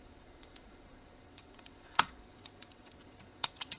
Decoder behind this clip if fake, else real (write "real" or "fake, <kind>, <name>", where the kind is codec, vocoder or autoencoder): fake, vocoder, Vocos